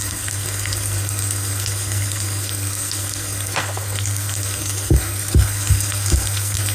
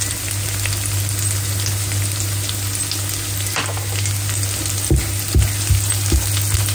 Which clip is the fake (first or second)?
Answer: first